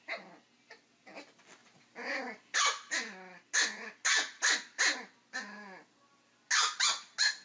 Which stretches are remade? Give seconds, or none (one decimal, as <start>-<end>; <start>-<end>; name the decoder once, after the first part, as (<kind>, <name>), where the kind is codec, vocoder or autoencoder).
none